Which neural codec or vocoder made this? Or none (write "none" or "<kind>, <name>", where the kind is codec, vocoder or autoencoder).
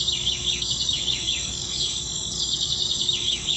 codec, DAC